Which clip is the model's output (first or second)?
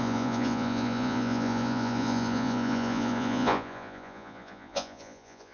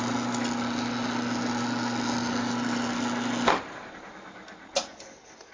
first